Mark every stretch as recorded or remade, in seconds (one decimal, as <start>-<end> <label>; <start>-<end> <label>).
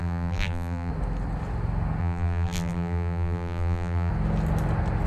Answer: 0.0-0.9 remade; 0.9-2.0 recorded; 2.0-4.1 remade; 4.1-5.1 recorded